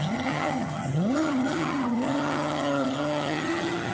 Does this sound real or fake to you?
fake